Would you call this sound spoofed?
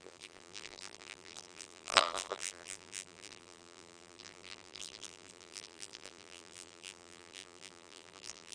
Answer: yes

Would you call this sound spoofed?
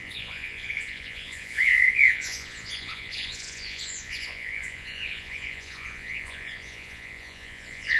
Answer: yes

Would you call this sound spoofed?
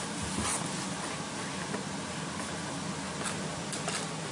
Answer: no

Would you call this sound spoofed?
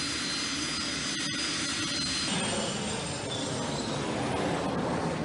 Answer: no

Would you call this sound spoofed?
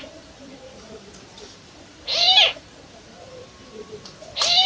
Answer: yes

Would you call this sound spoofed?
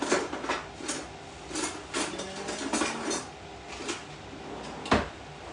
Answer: no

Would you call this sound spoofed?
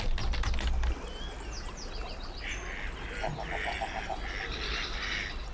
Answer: no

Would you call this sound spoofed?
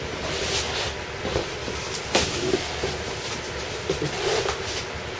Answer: no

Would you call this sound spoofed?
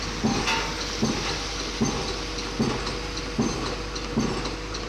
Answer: no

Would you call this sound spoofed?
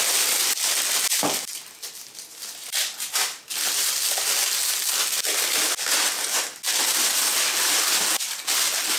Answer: no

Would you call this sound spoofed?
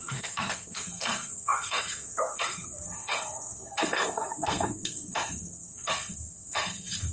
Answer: yes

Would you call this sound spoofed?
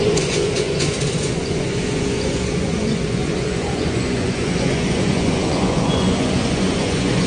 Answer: yes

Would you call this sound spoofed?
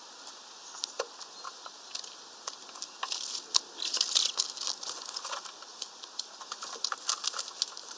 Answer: no